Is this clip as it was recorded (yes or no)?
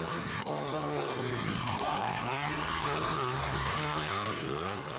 no